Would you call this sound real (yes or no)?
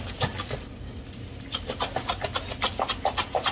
yes